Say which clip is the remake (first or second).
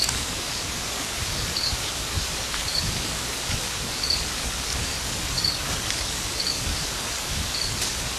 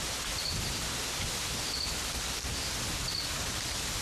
first